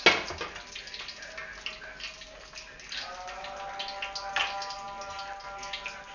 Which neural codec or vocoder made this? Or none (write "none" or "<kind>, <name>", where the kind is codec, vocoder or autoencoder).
none